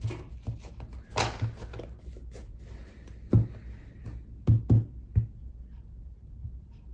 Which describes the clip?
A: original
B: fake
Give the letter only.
A